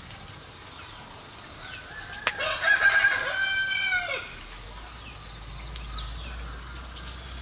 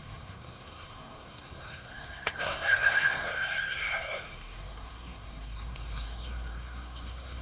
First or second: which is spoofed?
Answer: second